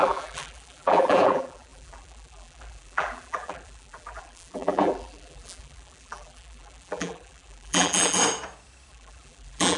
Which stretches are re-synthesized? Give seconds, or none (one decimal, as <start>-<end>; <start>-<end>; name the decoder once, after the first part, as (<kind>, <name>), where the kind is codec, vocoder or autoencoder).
0.0-8.2 (vocoder, BigVGAN v2); 8.9-9.8